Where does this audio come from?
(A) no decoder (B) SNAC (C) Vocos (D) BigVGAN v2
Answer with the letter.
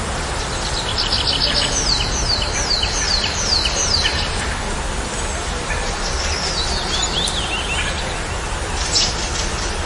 A